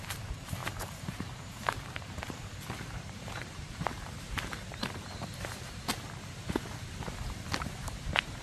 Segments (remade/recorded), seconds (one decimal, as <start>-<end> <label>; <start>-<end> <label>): 0.0-5.9 remade; 5.9-7.6 recorded; 7.6-8.4 remade